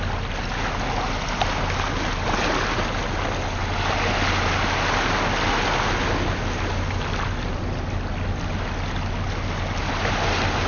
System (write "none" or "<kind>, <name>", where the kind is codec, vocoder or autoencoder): none